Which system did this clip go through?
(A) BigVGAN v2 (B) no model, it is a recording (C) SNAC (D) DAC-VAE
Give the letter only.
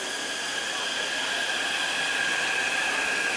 B